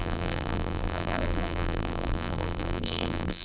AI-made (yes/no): yes